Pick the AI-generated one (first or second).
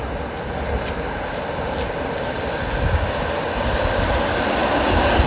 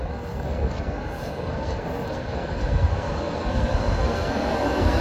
second